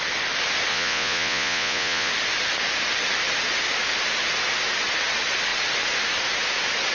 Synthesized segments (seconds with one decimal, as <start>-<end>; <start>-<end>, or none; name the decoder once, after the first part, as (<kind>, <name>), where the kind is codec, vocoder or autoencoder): 0.7-2.1 (vocoder, Vocos)